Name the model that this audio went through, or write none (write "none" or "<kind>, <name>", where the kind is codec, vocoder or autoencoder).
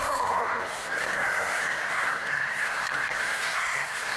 codec, SNAC